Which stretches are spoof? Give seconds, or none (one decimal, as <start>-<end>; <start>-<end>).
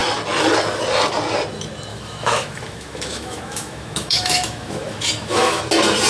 1.9-5.6